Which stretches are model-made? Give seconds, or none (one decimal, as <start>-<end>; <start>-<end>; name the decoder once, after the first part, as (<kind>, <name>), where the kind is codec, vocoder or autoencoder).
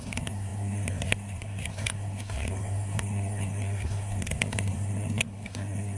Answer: 0.0-6.0 (codec, SNAC)